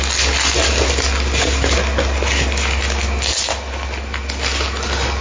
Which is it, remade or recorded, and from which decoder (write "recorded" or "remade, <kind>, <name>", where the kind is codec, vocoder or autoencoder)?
recorded